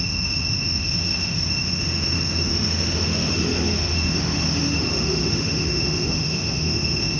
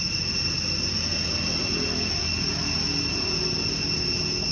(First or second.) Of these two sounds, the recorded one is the second